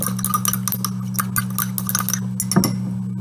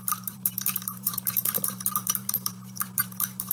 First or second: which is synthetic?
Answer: second